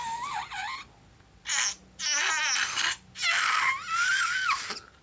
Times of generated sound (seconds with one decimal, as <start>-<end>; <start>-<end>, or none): none